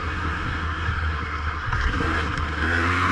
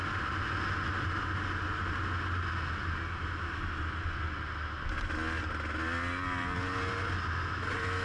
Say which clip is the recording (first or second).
second